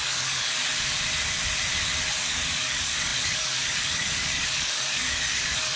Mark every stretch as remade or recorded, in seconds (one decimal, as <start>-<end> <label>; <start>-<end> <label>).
0.0-0.6 remade; 0.6-2.3 recorded; 2.3-5.8 remade